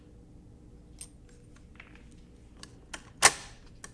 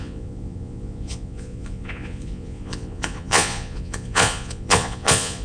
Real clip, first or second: first